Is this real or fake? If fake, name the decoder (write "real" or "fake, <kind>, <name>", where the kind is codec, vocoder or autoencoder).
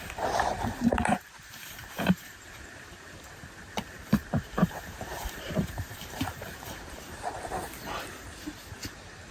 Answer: fake, vocoder, BigVGAN v2